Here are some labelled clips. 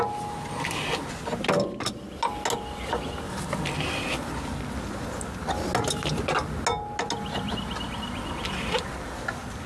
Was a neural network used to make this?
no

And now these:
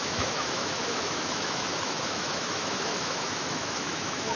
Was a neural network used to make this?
yes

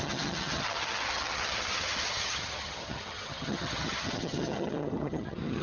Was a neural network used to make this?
yes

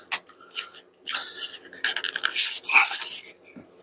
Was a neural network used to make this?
no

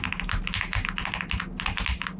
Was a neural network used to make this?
no